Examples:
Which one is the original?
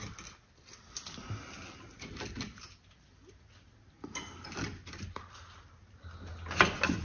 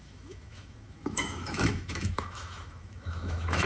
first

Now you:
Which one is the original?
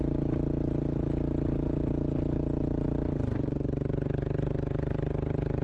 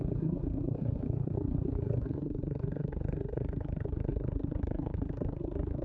first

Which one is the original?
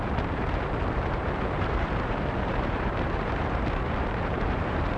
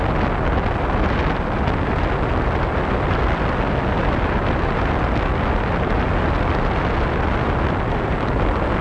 second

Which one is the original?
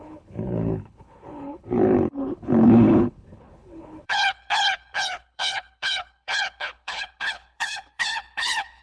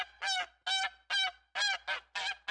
second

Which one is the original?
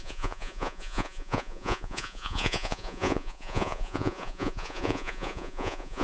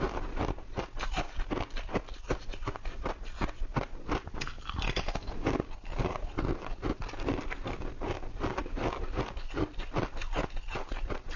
second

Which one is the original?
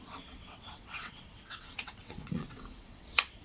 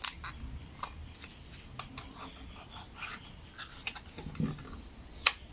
second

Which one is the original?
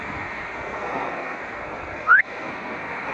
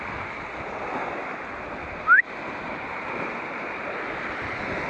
second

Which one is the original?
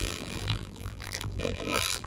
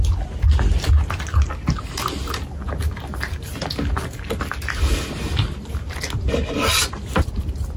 second